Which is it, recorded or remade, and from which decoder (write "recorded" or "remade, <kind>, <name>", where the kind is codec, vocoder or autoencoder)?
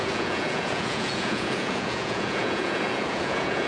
remade, vocoder, Vocos